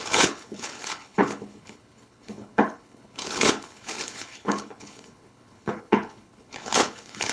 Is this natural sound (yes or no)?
no